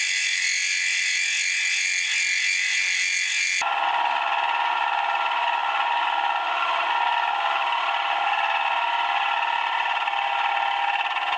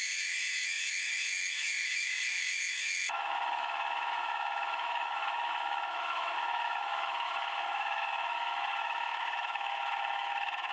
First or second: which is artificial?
second